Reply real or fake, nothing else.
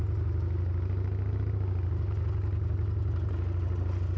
real